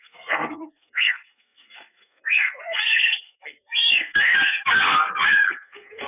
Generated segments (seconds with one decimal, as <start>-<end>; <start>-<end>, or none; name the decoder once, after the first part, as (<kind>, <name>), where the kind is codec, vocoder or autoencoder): 0.0-6.1 (codec, SNAC)